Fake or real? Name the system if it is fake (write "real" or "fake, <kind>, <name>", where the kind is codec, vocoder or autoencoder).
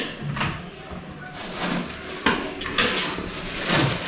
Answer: real